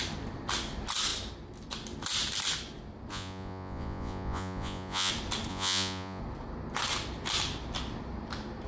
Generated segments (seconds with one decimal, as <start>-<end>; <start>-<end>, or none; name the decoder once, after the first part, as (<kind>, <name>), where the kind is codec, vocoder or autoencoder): 3.1-5.1 (vocoder, Vocos); 5.5-6.2